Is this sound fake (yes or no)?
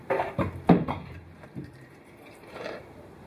yes